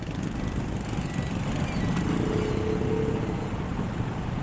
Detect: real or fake real